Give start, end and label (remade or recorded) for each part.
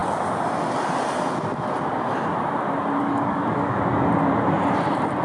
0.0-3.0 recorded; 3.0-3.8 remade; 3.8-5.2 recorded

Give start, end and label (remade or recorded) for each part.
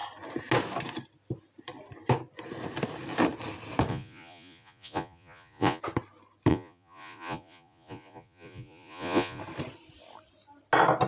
0.0-3.9 recorded; 3.9-5.8 remade; 5.8-6.5 recorded; 6.5-9.4 remade; 9.4-11.1 recorded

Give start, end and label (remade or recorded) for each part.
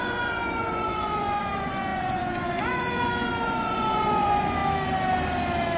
0.0-4.6 remade; 4.6-5.8 recorded